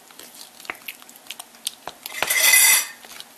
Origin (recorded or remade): recorded